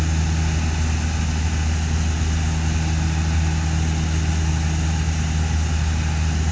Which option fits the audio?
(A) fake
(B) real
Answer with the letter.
B